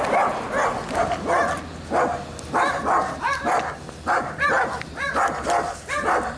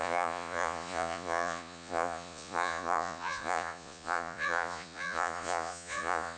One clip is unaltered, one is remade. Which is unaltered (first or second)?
first